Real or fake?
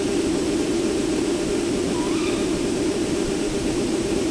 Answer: fake